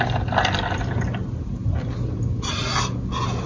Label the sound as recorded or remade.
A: recorded